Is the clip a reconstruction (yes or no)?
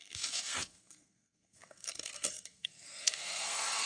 yes